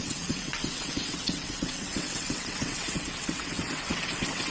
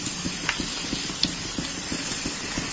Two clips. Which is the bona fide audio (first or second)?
second